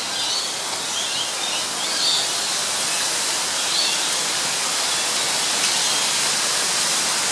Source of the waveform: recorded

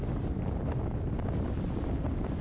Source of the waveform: recorded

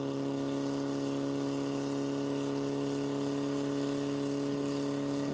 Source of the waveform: recorded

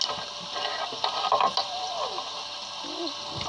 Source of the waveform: recorded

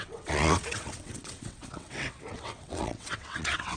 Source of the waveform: remade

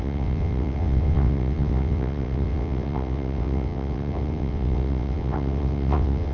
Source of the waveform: remade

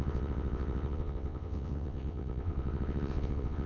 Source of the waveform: remade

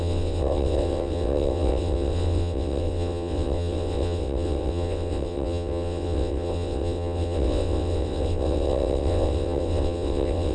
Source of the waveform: remade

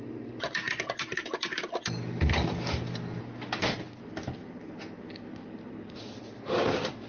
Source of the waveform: recorded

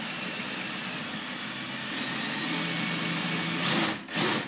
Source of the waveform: recorded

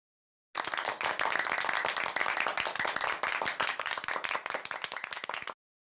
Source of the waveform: recorded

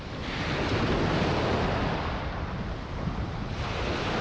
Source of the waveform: recorded